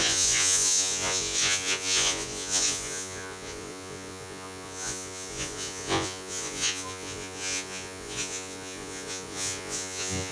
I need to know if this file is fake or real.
fake